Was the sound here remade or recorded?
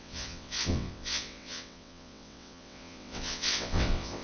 remade